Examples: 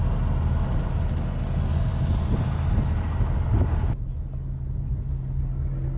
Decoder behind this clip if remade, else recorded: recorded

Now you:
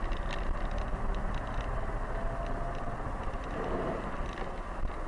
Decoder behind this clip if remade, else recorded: recorded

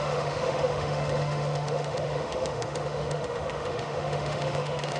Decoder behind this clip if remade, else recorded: remade, autoencoder, DAC-VAE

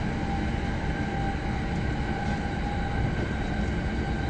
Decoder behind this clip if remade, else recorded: recorded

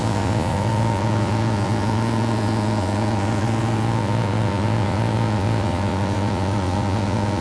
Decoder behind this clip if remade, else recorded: remade, vocoder, Vocos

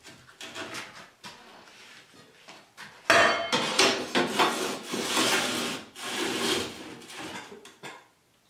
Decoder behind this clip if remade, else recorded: recorded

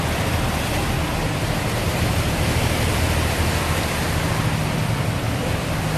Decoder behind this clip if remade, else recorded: remade, vocoder, BigVGAN v2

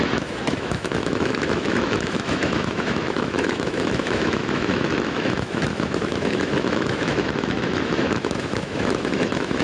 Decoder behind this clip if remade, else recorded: remade, autoencoder, DAC-VAE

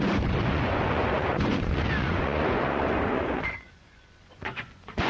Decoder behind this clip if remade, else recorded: remade, vocoder, Vocos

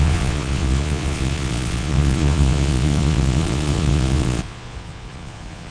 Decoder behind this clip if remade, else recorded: remade, vocoder, Vocos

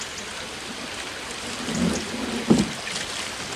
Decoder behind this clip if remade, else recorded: recorded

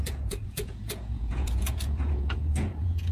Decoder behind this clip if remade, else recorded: remade, vocoder, Vocos